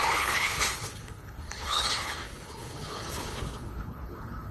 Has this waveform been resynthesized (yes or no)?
yes